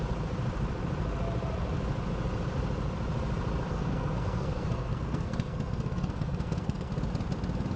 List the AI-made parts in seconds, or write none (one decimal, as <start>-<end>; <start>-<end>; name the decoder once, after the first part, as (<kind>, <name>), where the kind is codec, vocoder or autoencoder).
3.7-6.9 (codec, SNAC)